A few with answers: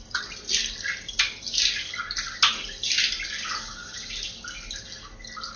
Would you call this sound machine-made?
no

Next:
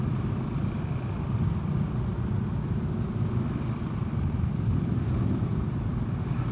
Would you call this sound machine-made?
no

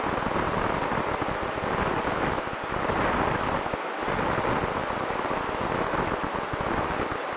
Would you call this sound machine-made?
no